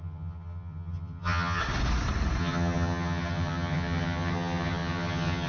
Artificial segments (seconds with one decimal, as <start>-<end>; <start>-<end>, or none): 0.0-1.6; 2.4-5.5